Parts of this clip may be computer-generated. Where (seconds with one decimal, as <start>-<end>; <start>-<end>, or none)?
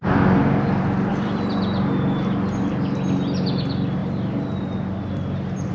none